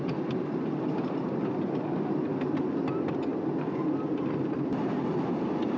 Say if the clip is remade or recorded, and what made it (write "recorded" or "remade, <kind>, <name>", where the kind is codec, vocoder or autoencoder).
recorded